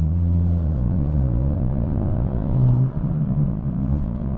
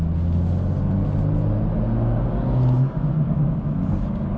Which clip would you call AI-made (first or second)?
first